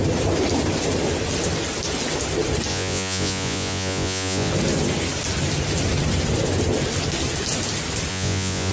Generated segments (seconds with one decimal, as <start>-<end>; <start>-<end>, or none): 2.7-4.5; 8.1-8.7